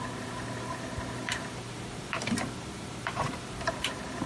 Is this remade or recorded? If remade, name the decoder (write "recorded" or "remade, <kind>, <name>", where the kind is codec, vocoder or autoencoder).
remade, vocoder, BigVGAN v2